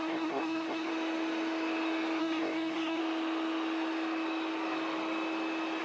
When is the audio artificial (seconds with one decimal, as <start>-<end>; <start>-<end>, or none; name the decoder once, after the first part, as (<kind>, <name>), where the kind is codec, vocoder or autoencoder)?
0.0-0.9 (codec, SNAC); 2.2-3.0